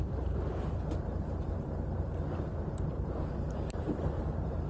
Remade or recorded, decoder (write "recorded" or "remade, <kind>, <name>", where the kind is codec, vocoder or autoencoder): remade, vocoder, BigVGAN v2